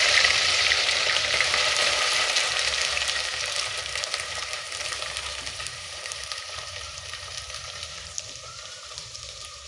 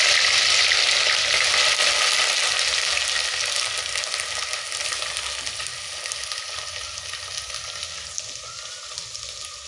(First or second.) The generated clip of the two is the first